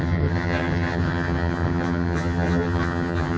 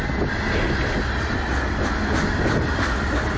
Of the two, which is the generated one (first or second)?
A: first